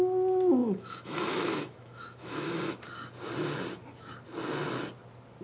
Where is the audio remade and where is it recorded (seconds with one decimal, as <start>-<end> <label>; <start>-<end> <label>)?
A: 0.0-0.6 recorded; 0.6-2.6 remade; 2.6-5.4 recorded

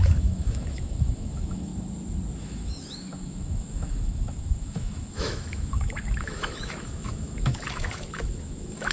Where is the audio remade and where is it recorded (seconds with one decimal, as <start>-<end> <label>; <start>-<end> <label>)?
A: 0.0-1.7 remade; 1.7-2.4 recorded; 2.4-8.9 remade

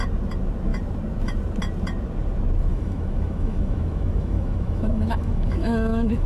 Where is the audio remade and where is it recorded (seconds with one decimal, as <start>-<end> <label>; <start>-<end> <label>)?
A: 0.0-2.7 recorded; 2.7-6.3 remade

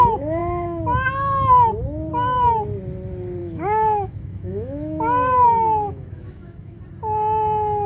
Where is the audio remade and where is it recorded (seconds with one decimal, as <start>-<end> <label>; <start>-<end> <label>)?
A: 0.0-3.4 recorded; 3.4-6.8 remade; 6.8-7.9 recorded

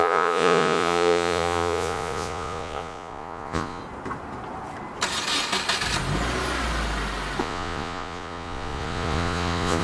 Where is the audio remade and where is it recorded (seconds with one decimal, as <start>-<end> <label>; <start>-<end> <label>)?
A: 0.0-3.8 remade; 3.8-7.4 recorded; 7.4-9.8 remade

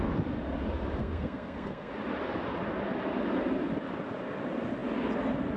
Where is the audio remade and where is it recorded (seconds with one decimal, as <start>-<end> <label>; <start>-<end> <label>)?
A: 0.0-1.0 recorded; 1.0-1.9 remade; 1.9-5.6 recorded

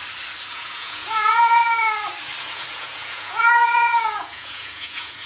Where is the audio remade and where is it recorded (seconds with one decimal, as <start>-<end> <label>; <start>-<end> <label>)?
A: 0.0-0.5 recorded; 0.5-1.6 remade; 1.6-2.4 recorded; 2.4-5.3 remade